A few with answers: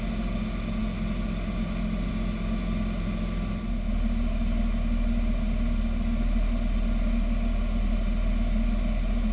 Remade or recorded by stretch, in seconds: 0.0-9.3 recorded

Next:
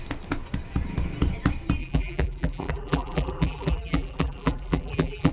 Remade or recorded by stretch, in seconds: 0.0-1.8 recorded; 1.8-5.3 remade

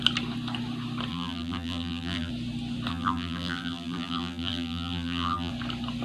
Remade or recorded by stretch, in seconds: 0.0-1.1 recorded; 1.1-2.3 remade; 2.3-2.9 recorded; 2.9-5.5 remade; 5.5-6.0 recorded

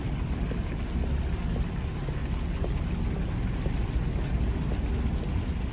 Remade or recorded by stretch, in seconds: 0.0-0.7 remade; 0.7-2.2 recorded; 2.2-3.3 remade; 3.3-5.7 recorded

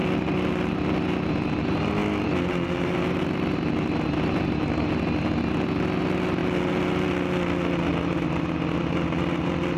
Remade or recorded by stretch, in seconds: 0.0-9.8 recorded

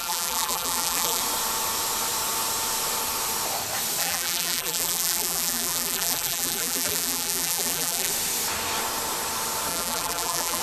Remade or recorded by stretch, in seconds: 0.0-1.2 remade; 1.2-4.0 recorded; 4.0-8.1 remade; 8.1-9.7 recorded; 9.7-10.6 remade

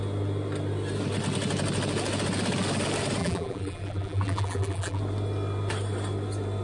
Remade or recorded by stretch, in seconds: 0.0-3.2 recorded; 3.2-5.0 remade; 5.0-6.6 recorded

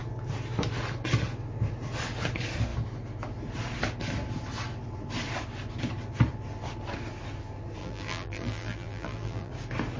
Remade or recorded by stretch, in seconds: 0.0-7.8 recorded; 7.8-9.5 remade; 9.5-10.0 recorded